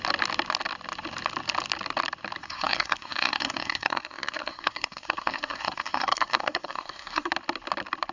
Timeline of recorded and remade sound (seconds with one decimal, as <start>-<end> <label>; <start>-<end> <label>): 0.0-2.4 recorded; 2.4-7.3 remade; 7.3-8.1 recorded